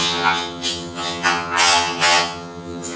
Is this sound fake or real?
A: fake